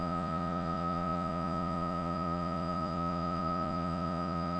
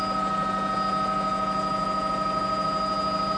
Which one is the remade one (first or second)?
first